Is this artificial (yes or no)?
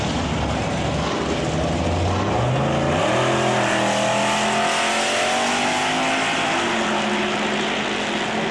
no